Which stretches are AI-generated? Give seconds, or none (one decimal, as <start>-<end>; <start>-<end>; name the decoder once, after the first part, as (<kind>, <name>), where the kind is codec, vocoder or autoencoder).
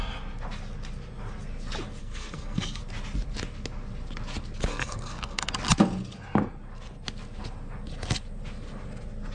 2.0-2.8 (codec, SNAC); 4.7-5.5